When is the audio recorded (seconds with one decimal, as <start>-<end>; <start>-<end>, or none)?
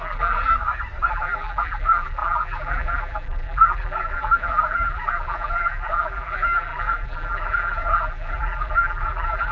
0.5-1.1